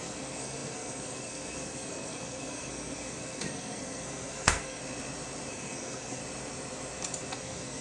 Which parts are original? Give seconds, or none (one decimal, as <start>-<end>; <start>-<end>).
4.8-5.5; 6.2-7.3